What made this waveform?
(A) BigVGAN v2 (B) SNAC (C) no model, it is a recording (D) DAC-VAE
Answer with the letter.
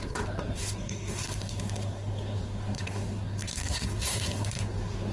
B